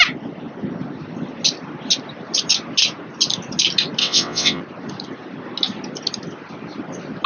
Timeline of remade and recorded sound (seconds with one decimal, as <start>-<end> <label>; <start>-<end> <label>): 0.0-4.0 recorded; 4.0-4.6 remade; 4.6-7.3 recorded